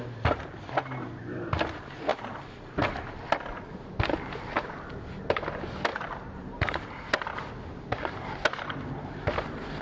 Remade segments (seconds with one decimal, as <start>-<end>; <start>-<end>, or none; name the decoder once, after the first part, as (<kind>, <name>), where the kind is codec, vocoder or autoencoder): 2.1-3.2 (vocoder, BigVGAN v2); 5.9-7.1